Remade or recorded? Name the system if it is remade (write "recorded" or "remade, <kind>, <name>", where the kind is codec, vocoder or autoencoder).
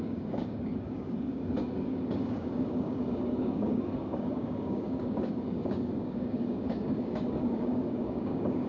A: remade, codec, DAC